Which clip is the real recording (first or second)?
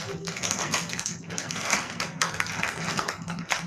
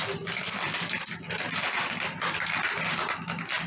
second